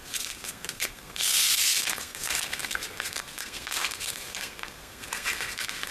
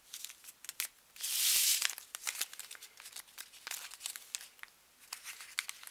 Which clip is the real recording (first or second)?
second